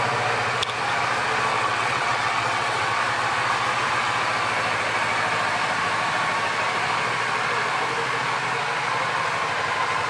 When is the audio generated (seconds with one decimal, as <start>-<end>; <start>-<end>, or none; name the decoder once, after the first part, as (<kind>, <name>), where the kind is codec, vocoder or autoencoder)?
1.5-3.0 (vocoder, WaveNeXt)